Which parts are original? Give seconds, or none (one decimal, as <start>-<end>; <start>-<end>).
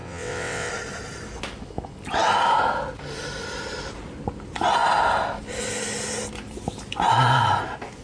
0.7-8.0